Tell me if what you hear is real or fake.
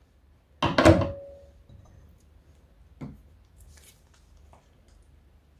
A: real